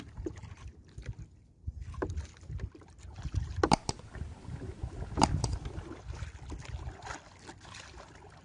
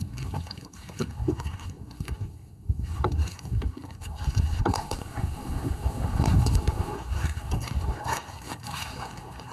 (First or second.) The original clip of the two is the first